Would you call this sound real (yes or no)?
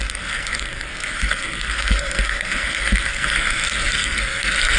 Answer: no